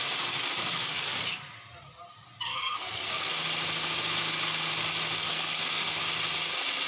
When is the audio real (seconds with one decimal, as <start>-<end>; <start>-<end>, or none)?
0.0-0.6; 1.2-2.5; 3.3-5.3; 6.0-6.9

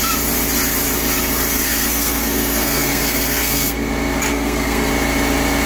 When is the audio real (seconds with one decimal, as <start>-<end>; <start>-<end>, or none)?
0.0-1.7; 3.9-4.3; 4.9-5.7

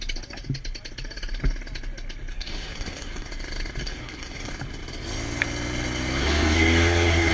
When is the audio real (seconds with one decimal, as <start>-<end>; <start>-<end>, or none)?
0.0-2.3; 3.3-3.8; 4.5-6.2

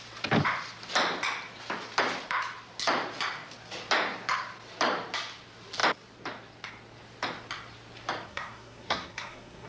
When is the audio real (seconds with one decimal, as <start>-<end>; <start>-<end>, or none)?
0.0-8.3

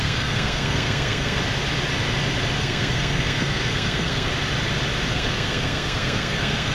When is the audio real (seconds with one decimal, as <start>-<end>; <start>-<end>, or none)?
1.4-2.6; 4.3-5.1

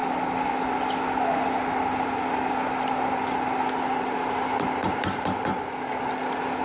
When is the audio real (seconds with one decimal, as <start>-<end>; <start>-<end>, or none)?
0.0-6.6